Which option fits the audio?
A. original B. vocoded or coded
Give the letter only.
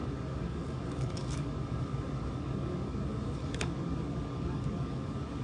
B